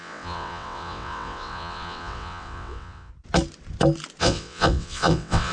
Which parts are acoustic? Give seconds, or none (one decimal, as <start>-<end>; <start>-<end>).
3.1-4.2